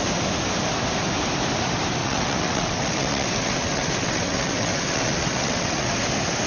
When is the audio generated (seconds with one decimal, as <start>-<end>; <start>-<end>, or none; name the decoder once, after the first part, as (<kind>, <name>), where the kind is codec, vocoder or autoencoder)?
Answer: 2.0-5.9 (vocoder, WaveNeXt)